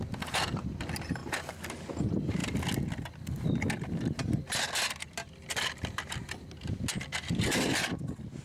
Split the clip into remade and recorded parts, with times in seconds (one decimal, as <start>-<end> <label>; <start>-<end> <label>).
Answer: 0.0-8.4 recorded